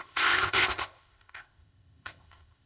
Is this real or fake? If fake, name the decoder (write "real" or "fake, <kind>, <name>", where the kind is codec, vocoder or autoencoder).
fake, codec, ZipCodec